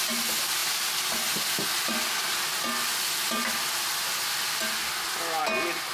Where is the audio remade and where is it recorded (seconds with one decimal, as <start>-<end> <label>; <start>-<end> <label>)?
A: 0.0-5.9 recorded